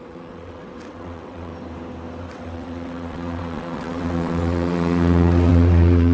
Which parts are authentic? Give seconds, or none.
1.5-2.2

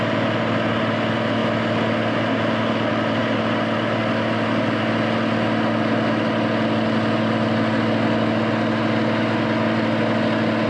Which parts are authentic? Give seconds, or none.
0.0-10.7

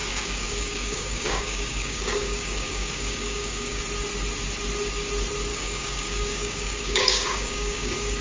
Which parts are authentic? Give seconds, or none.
3.8-5.5